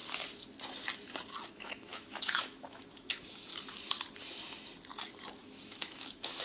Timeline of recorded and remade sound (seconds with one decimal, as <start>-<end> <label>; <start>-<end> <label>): 0.0-1.5 recorded; 1.5-3.5 remade; 3.5-5.3 recorded; 5.3-6.4 remade